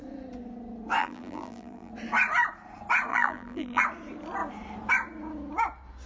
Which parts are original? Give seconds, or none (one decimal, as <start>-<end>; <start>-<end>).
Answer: 0.0-1.0; 1.9-3.1; 3.8-6.1